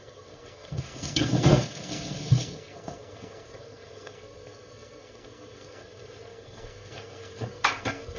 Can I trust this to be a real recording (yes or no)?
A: no